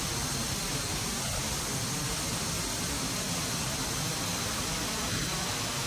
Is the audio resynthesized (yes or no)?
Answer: no